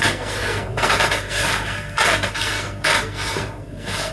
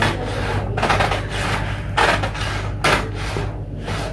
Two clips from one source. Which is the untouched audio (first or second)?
second